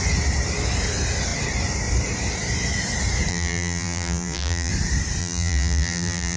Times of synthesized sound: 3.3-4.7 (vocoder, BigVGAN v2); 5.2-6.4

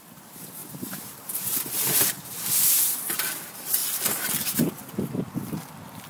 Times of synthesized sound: 0.6-2.5 (vocoder, BigVGAN v2)

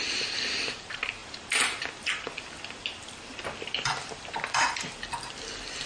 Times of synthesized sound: 0.0-5.9 (vocoder, BigVGAN v2)

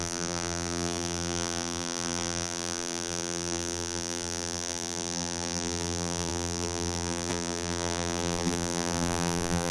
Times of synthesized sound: 0.0-9.7 (vocoder, BigVGAN v2)

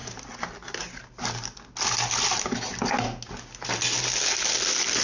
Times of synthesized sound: none

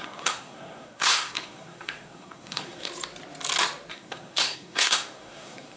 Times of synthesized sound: 0.0-2.9 (codec, SNAC); 3.9-5.8